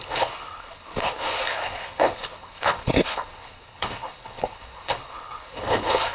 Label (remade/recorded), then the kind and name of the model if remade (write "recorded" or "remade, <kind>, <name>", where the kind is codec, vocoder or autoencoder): remade, codec, HILCodec